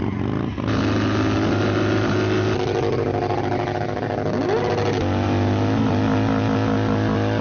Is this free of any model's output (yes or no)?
yes